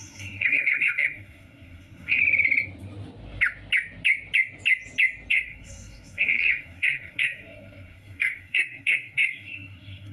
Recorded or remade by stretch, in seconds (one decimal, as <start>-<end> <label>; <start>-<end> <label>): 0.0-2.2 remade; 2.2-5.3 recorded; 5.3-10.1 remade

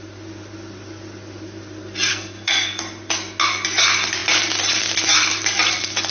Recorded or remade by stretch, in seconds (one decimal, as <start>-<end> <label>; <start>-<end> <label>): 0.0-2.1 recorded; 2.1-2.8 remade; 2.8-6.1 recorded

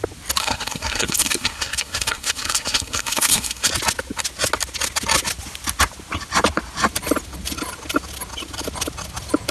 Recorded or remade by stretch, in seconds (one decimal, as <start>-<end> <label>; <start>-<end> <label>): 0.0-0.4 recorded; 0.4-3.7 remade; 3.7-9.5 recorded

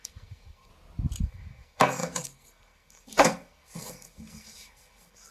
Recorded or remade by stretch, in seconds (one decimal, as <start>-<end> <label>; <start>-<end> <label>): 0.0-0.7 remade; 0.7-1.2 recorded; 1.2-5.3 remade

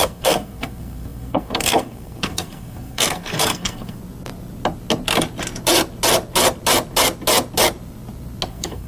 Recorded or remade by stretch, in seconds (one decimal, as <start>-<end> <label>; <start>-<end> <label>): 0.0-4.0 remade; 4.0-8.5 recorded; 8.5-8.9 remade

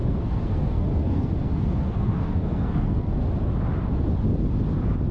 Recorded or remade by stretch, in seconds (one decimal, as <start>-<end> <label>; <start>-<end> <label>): 0.0-3.1 remade; 3.1-5.1 recorded

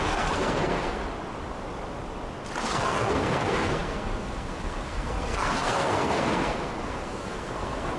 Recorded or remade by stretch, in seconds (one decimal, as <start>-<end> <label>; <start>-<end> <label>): 0.0-1.0 remade; 1.0-2.6 recorded; 2.6-8.0 remade